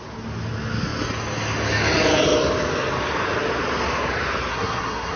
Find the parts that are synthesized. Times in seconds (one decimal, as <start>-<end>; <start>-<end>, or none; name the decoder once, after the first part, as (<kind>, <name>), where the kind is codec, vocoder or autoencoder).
4.5-5.2 (codec, SNAC)